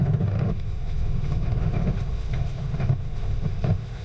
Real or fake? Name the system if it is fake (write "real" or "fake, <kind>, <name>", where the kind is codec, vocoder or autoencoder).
fake, autoencoder, DAC-VAE